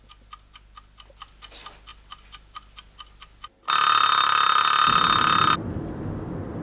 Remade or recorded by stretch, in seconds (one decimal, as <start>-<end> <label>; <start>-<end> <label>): 0.0-6.6 recorded